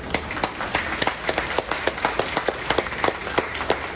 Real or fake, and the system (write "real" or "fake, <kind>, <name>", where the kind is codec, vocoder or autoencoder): real